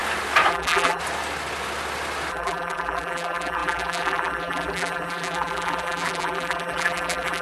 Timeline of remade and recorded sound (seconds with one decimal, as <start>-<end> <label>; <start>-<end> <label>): 0.0-0.5 recorded; 0.5-1.0 remade; 1.0-2.3 recorded; 2.3-7.4 remade